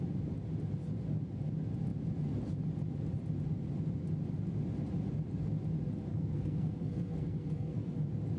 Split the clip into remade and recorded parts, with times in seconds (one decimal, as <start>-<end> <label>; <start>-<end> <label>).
0.0-6.1 recorded; 6.1-7.9 remade; 7.9-8.4 recorded